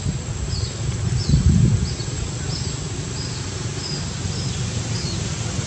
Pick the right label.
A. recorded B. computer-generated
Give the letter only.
A